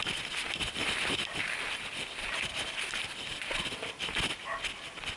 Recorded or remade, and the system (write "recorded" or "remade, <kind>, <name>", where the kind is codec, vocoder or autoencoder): recorded